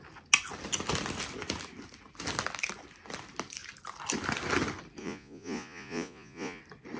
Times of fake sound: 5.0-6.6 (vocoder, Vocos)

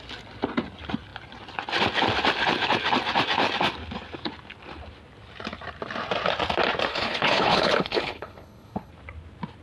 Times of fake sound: 6.9-8.9 (codec, HILCodec)

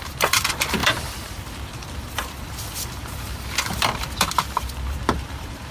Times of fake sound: 0.0-5.7 (vocoder, BigVGAN v2)